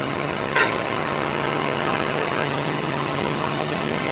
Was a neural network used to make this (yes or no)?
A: yes